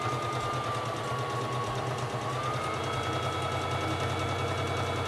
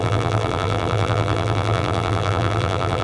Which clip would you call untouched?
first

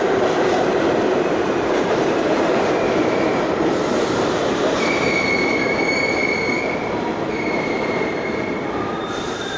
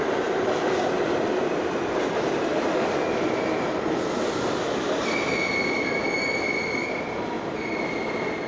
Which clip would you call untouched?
second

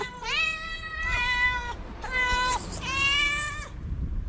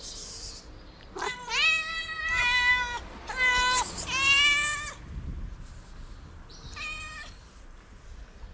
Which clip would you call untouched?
second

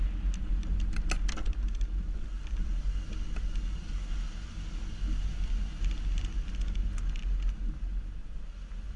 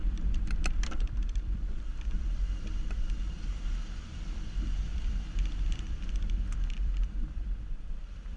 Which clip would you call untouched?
first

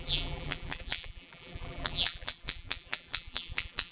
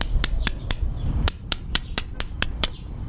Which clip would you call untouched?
second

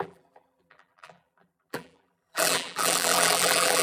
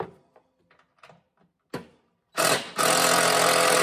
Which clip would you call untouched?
second